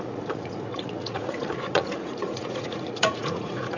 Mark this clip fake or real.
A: fake